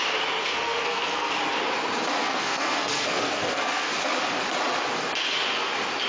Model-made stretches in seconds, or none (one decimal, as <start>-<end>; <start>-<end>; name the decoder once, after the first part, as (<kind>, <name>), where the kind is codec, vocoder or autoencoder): 0.4-1.3 (codec, SNAC); 2.2-3.9